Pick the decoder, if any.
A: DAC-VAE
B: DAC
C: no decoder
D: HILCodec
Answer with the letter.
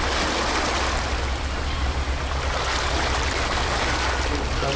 C